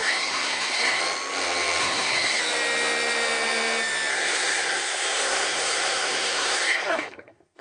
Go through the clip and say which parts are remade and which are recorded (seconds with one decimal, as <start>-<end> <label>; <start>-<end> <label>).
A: 0.0-1.0 remade; 1.0-1.8 recorded; 1.8-2.4 remade; 2.4-4.1 recorded; 4.1-7.6 remade